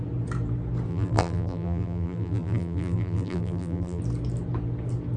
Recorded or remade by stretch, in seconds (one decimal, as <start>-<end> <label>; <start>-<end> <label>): 0.0-0.9 recorded; 0.9-4.0 remade; 4.0-5.2 recorded